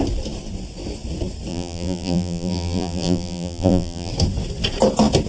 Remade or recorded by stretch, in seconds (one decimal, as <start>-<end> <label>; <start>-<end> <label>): 0.0-1.5 recorded; 1.5-4.1 remade; 4.1-5.3 recorded